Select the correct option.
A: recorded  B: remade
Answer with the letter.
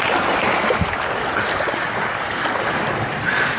A